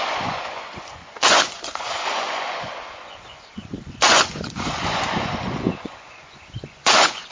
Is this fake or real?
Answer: fake